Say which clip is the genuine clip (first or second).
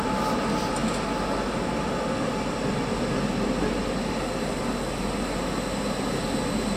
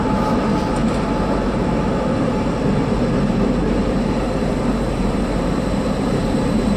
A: first